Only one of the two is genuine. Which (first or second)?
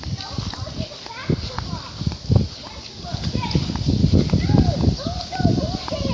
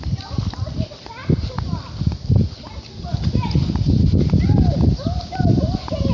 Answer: first